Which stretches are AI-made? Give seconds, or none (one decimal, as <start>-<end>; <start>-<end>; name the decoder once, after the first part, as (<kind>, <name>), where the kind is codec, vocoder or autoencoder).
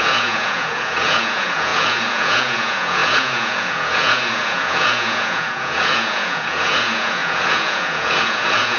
0.0-8.8 (vocoder, Vocos)